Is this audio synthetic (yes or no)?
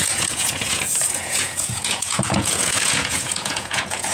yes